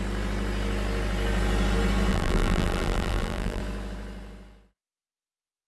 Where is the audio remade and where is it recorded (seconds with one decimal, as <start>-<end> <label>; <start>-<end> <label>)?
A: 0.0-2.1 recorded; 2.1-3.6 remade; 3.6-5.7 recorded